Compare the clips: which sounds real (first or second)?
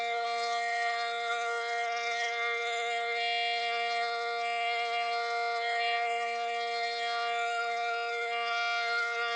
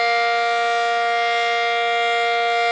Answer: second